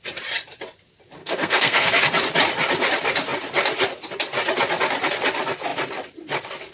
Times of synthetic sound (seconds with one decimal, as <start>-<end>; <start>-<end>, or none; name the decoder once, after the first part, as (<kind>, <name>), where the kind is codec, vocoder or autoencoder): 1.2-1.9 (codec, SNAC)